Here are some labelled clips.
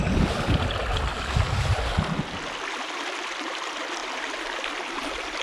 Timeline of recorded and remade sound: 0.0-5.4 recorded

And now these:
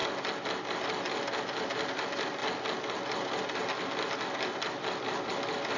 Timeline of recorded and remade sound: 0.0-5.8 recorded

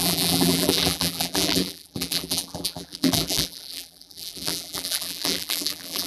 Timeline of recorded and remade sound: 0.0-6.1 remade

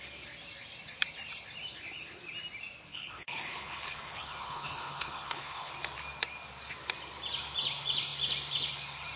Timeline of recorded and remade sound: 0.0-2.9 recorded; 2.9-5.7 remade; 5.7-9.2 recorded